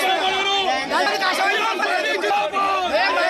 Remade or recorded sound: recorded